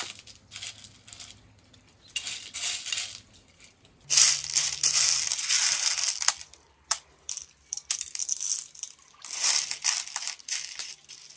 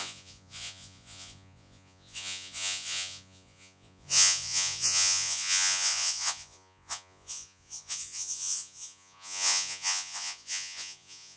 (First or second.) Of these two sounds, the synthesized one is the second